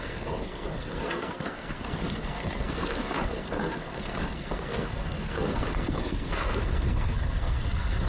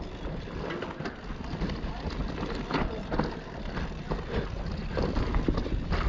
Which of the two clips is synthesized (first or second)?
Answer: first